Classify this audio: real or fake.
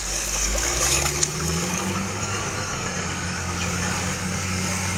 fake